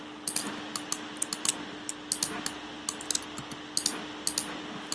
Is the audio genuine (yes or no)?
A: yes